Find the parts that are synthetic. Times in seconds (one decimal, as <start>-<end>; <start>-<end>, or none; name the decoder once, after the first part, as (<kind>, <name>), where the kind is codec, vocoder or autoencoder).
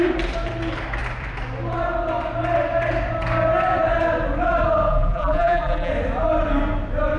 4.9-5.9 (vocoder, BigVGAN v2)